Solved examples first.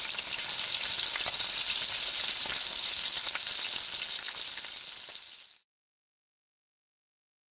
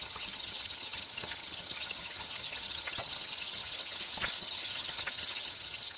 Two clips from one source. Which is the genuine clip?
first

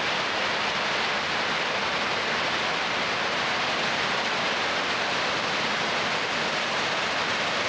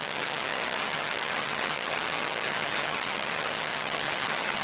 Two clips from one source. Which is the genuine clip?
first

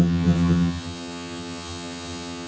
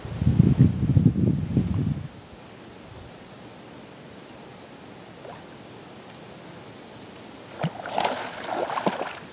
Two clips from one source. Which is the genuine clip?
second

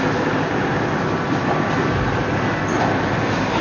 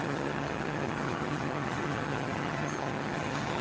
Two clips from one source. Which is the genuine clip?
first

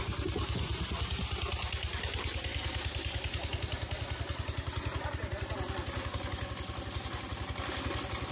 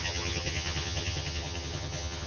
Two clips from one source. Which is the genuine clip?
first